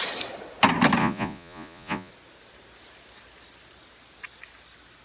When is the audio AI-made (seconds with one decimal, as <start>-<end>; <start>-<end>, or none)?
1.0-2.1